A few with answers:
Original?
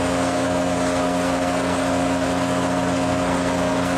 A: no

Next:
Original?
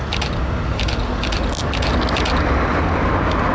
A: yes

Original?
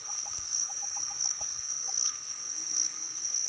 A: no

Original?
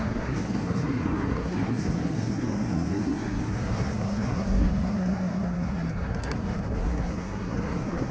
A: no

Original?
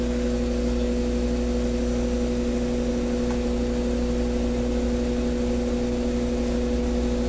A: yes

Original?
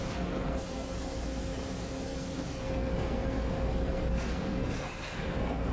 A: no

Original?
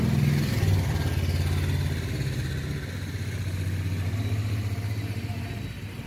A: yes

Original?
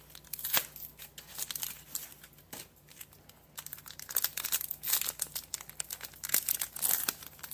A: yes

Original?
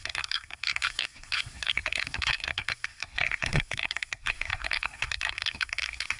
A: no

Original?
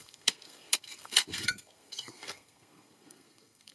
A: no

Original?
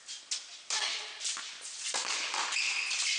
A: yes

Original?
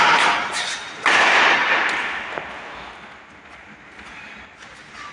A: yes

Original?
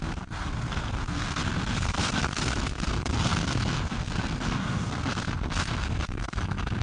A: no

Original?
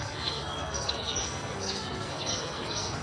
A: no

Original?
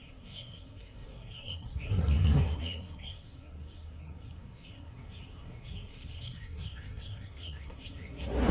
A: no